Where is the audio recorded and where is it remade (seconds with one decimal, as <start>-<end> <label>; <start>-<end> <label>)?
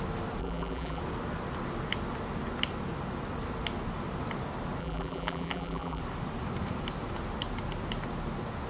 0.0-0.4 recorded; 0.4-1.0 remade; 1.0-4.8 recorded; 4.8-6.0 remade; 6.0-8.7 recorded